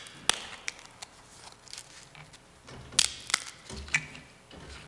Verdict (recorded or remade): recorded